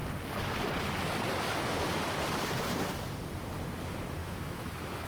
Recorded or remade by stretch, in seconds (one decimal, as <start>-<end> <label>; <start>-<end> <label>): 0.0-4.2 recorded; 4.2-5.1 remade